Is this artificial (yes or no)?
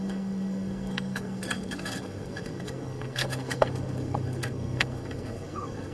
yes